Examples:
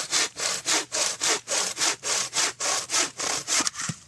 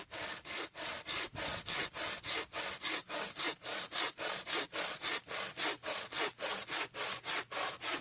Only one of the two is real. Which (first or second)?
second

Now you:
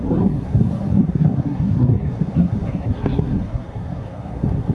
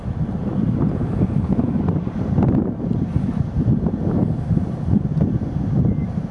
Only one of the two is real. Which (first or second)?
second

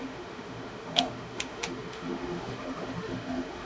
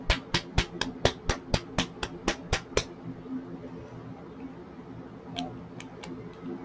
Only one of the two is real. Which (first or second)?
second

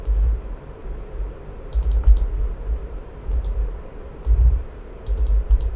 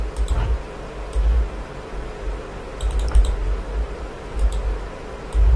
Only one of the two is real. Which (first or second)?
second